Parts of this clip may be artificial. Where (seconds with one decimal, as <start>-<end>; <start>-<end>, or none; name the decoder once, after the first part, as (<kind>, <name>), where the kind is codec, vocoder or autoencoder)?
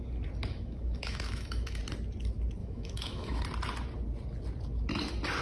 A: 0.5-1.8 (autoencoder, DAC-VAE); 2.6-3.4